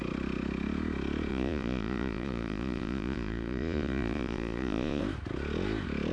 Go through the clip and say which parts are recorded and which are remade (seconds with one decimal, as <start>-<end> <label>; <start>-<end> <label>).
0.0-1.3 recorded; 1.3-5.0 remade; 5.0-6.1 recorded